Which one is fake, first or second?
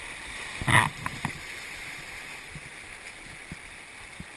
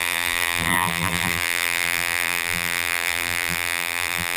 second